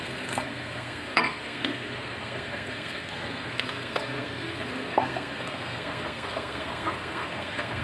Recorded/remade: remade